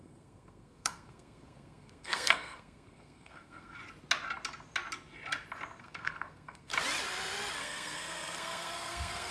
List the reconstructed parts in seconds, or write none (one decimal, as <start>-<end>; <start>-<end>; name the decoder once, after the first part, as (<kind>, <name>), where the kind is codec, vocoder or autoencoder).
0.0-3.8 (codec, SNAC); 5.8-6.7; 7.6-9.3